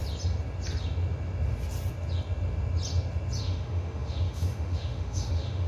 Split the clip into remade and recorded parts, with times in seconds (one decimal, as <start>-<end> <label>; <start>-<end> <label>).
0.0-3.4 recorded; 3.4-5.7 remade